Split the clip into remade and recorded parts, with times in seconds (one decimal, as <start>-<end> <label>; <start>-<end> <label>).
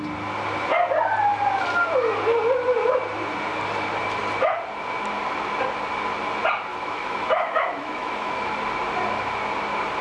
0.0-6.7 recorded; 6.7-8.5 remade; 8.5-10.0 recorded